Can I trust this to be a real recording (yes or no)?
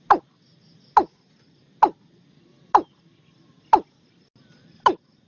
yes